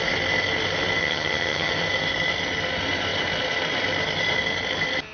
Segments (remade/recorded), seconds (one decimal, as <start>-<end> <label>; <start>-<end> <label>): 0.0-1.0 recorded; 1.0-1.7 remade; 1.7-5.1 recorded